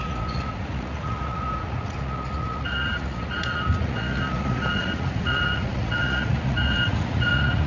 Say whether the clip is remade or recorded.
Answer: remade